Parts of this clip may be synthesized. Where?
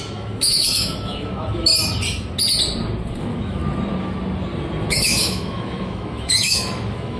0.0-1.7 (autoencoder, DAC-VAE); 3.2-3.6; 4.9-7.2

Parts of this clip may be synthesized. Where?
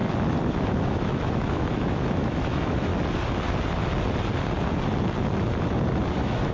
0.5-2.9 (autoencoder, DAC-VAE); 6.1-6.5